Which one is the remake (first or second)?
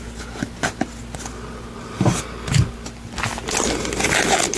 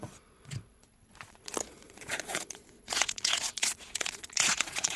second